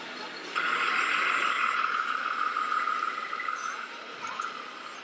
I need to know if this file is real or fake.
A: real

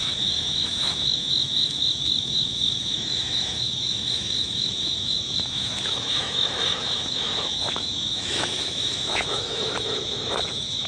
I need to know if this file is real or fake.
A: fake